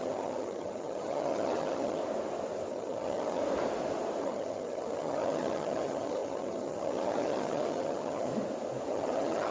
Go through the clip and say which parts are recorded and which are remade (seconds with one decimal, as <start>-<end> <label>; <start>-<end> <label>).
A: 0.0-2.0 remade; 2.0-2.7 recorded; 2.7-3.4 remade; 3.4-4.2 recorded; 4.2-8.3 remade; 8.3-8.9 recorded; 8.9-9.5 remade